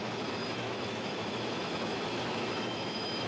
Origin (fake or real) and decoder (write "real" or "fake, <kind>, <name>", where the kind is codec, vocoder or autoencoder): fake, autoencoder, DAC-VAE